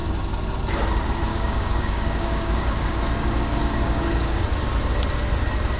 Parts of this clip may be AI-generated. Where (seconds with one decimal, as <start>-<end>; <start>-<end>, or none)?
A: 1.3-4.4